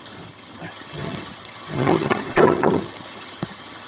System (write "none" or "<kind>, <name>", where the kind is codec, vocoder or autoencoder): vocoder, HiFi-GAN